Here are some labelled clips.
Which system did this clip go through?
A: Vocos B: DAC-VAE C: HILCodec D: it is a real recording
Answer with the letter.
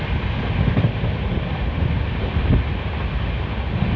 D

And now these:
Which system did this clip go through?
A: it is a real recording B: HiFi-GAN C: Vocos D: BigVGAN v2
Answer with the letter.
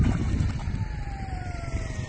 D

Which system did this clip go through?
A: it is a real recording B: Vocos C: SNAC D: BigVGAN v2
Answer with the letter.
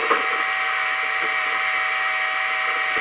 A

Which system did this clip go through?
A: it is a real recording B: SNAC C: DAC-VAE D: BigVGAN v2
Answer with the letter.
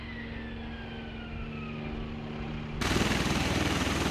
A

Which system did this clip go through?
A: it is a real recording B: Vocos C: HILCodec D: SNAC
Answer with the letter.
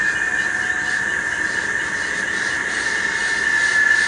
A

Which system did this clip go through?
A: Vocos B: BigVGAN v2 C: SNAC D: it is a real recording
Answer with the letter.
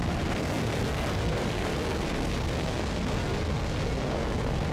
C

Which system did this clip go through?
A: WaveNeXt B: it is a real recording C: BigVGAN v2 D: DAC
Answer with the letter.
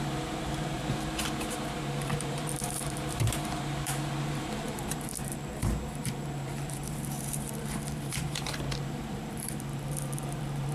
C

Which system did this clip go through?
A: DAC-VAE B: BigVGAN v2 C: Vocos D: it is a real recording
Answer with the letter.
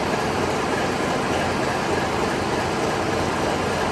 D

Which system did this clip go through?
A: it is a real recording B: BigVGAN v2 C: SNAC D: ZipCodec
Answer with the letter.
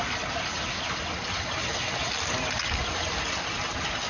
A